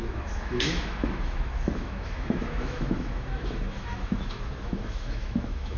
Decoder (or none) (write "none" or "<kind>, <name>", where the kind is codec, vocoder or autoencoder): autoencoder, DAC-VAE